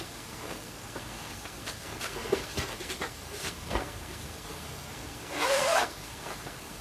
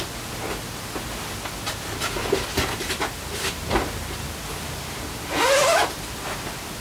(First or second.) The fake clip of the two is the first